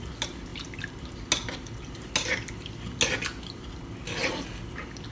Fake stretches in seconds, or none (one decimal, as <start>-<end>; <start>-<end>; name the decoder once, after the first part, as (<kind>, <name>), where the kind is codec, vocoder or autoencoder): none